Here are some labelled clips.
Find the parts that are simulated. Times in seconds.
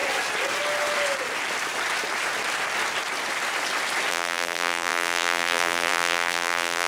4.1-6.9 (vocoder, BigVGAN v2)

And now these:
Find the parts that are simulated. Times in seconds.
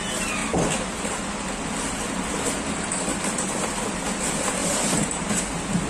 3.1-3.8 (vocoder, BigVGAN v2); 4.6-5.4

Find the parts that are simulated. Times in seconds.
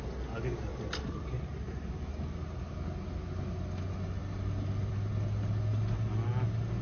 0.7-2.2 (vocoder, BigVGAN v2)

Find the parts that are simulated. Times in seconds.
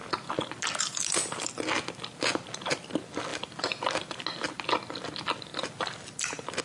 3.3-4.2 (vocoder, BigVGAN v2); 5.5-6.6